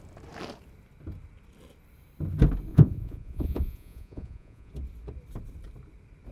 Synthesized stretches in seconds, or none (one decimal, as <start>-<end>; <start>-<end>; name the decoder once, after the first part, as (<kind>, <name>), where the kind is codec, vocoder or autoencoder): 2.7-4.7 (vocoder, Vocos)